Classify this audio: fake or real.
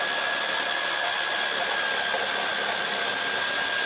real